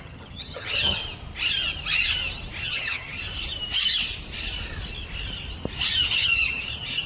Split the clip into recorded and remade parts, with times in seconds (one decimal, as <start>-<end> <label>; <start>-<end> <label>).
0.0-1.0 remade; 1.0-2.6 recorded; 2.6-3.2 remade; 3.2-6.1 recorded; 6.1-7.1 remade